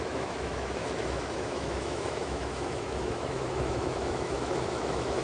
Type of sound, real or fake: fake